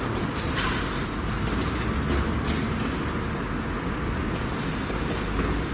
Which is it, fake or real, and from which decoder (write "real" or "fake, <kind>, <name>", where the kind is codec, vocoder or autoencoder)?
real